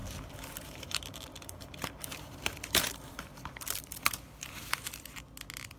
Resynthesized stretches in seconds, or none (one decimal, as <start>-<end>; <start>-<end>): 0.0-3.5